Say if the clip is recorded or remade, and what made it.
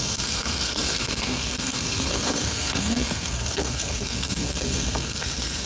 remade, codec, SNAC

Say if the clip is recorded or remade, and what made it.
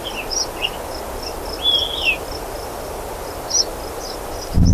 recorded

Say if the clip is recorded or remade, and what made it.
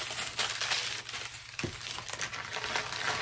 recorded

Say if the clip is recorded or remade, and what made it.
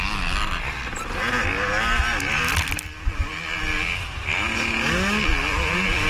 recorded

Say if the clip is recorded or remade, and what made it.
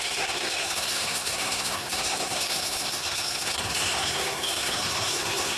remade, codec, SNAC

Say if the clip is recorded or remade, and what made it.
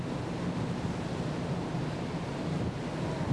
recorded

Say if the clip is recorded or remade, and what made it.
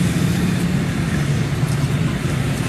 recorded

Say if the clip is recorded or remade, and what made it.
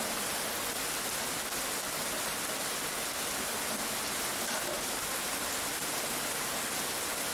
recorded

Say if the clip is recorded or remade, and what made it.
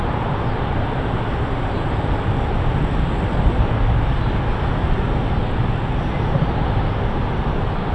recorded